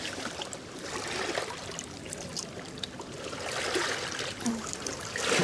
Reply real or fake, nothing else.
real